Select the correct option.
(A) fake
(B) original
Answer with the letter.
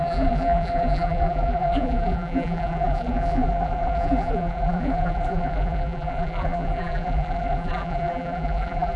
A